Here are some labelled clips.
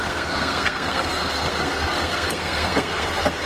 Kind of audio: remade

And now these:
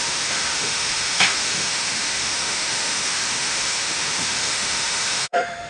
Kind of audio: remade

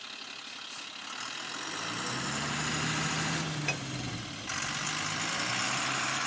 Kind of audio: recorded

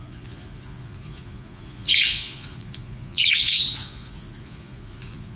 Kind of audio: remade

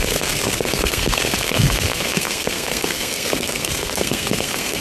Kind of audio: remade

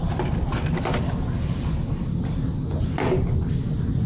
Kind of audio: recorded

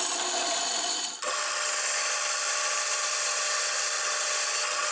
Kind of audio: recorded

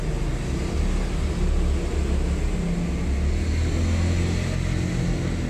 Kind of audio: recorded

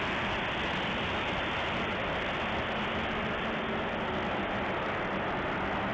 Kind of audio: recorded